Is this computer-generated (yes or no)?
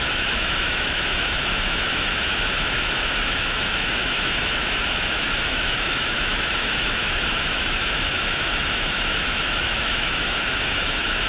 yes